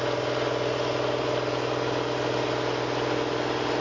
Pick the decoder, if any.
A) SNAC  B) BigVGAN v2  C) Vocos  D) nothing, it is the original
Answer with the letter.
D